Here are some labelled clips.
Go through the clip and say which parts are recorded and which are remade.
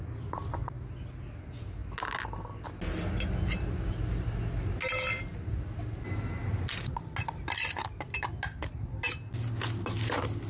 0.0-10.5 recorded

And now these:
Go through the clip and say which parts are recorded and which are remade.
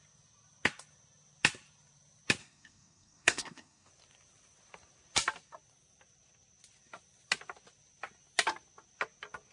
0.0-2.4 recorded; 2.4-3.9 remade; 3.9-9.5 recorded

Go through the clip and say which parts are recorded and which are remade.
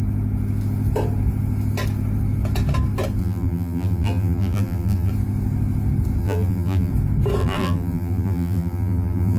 0.0-3.2 recorded; 3.2-5.1 remade; 5.1-6.2 recorded; 6.2-6.9 remade; 6.9-7.4 recorded; 7.4-9.4 remade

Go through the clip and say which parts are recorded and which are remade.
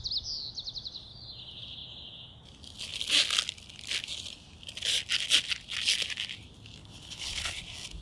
0.0-6.8 recorded; 6.8-7.6 remade; 7.6-8.0 recorded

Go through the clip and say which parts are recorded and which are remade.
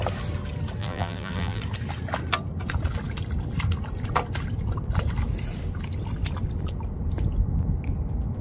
0.0-0.8 recorded; 0.8-1.6 remade; 1.6-8.4 recorded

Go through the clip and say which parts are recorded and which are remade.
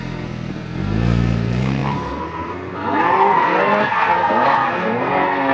0.0-5.5 remade